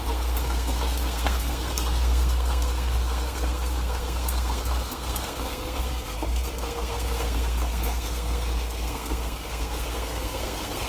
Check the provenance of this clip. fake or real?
fake